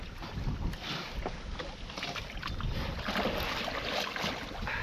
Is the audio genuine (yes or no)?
yes